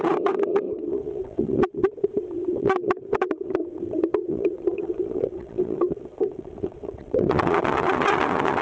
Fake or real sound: fake